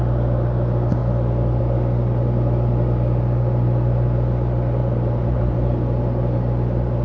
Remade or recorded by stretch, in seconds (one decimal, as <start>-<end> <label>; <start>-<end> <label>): 0.0-4.8 recorded; 4.8-5.4 remade; 5.4-7.0 recorded